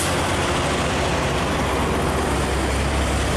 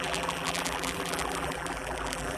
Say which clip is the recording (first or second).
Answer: first